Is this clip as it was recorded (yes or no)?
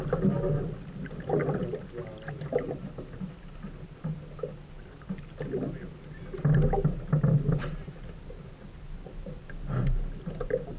yes